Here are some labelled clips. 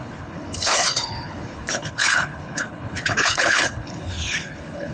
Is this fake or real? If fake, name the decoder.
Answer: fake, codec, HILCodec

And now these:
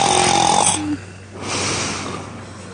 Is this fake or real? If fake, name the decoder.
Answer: real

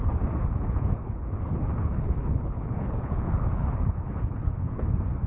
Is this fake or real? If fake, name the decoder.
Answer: fake, codec, HILCodec